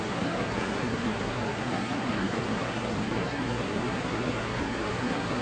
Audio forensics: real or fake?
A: fake